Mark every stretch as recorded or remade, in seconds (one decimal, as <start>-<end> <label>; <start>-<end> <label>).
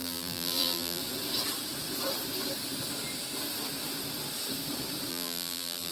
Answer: 0.0-1.0 remade; 1.0-5.1 recorded; 5.1-5.9 remade